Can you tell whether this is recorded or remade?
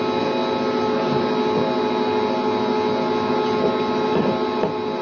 recorded